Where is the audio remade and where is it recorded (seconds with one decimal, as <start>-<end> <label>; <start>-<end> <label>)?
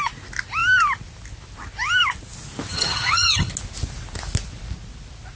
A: 0.0-2.7 recorded; 2.7-3.5 remade; 3.5-5.4 recorded